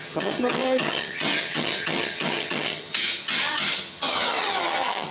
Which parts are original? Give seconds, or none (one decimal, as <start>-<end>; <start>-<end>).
none